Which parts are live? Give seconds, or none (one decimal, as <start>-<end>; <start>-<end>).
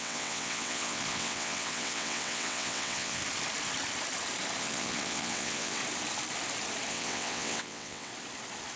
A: 3.2-4.6; 5.8-6.9; 8.1-8.8